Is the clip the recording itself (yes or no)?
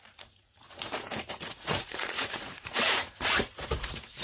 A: no